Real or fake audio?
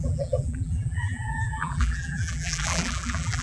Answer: fake